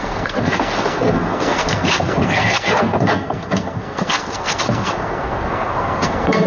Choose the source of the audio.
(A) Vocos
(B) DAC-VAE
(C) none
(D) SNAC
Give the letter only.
D